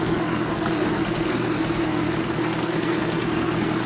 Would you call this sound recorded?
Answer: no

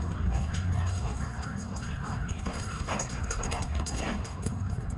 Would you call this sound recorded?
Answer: no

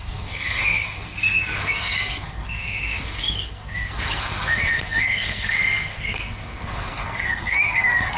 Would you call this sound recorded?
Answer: no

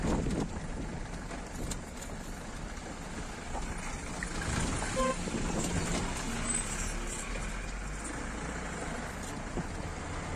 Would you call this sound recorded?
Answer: yes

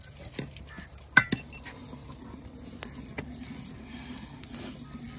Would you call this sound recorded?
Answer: yes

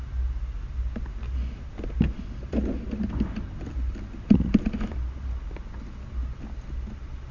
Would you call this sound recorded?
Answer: yes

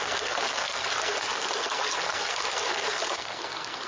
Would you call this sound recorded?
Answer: no